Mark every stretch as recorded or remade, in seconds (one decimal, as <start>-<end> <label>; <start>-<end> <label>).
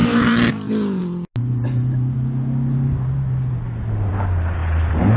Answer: 0.0-0.5 remade; 0.5-4.6 recorded; 4.6-5.2 remade